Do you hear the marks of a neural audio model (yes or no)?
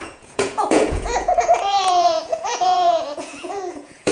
yes